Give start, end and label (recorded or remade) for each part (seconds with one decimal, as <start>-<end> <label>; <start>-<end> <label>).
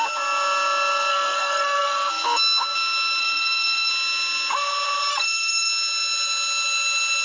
0.0-1.1 recorded; 1.1-2.1 remade; 2.1-3.2 recorded; 3.2-3.9 remade; 3.9-5.1 recorded; 5.1-5.7 remade; 5.7-7.2 recorded